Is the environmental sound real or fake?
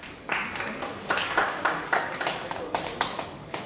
fake